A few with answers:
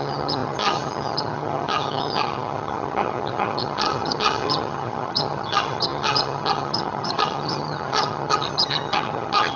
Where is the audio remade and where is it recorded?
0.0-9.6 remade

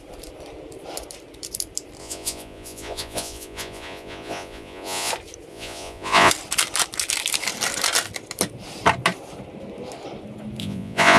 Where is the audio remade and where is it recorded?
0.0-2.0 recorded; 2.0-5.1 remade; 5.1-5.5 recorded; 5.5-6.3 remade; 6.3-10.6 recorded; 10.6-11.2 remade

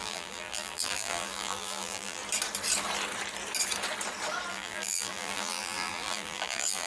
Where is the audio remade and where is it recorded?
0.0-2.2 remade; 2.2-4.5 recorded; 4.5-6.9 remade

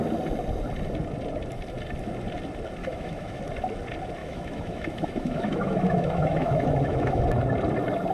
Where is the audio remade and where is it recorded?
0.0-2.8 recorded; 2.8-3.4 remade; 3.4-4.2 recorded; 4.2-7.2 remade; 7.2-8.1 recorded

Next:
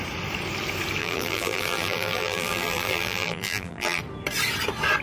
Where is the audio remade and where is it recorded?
0.0-1.0 recorded; 1.0-4.0 remade; 4.0-5.0 recorded

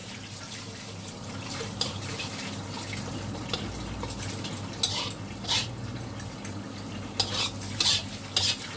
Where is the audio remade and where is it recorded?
0.0-2.3 remade; 2.3-8.8 recorded

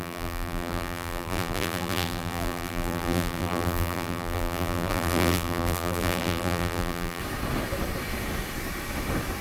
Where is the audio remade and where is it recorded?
0.0-7.2 remade; 7.2-9.4 recorded